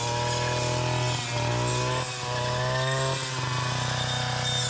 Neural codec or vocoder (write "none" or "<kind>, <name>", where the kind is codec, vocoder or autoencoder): none